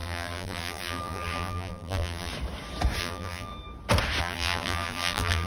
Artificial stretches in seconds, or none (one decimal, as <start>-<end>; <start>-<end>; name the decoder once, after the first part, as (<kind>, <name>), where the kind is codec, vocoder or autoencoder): 0.0-2.3 (vocoder, BigVGAN v2); 3.0-3.5; 4.2-5.5